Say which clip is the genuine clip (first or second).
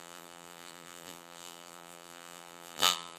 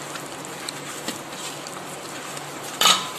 second